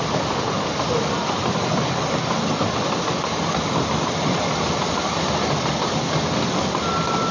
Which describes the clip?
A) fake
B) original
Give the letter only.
B